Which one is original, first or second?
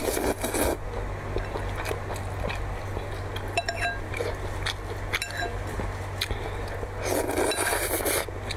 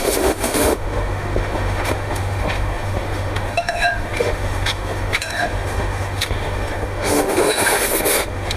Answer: first